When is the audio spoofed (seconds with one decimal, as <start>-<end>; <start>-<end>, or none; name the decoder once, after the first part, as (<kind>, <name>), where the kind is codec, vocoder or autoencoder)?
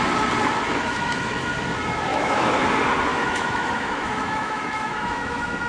0.7-1.3 (autoencoder, DAC-VAE); 2.1-2.6; 3.1-5.7